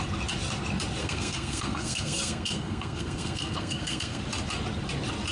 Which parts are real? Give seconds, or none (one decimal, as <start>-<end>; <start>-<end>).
0.0-1.0; 4.2-5.3